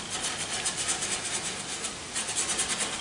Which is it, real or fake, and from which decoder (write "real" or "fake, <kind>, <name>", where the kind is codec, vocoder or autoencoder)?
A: real